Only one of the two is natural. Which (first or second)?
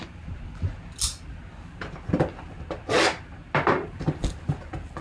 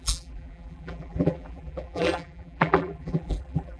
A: first